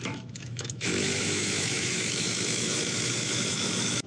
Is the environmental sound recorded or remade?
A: remade